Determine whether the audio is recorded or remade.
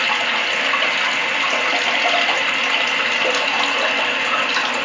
recorded